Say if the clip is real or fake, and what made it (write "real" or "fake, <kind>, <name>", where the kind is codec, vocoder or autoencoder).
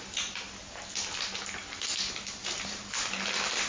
real